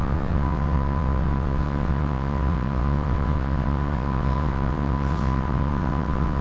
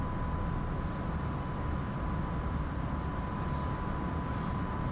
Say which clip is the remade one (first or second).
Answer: first